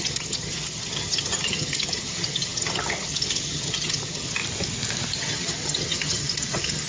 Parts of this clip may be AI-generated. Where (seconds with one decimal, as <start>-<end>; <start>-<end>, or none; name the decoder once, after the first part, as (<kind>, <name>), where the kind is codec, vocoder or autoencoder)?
0.0-4.4 (vocoder, HiFi-GAN); 5.2-6.9